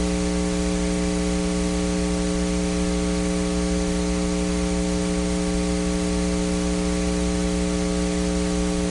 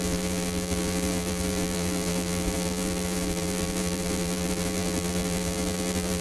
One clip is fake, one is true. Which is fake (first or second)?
second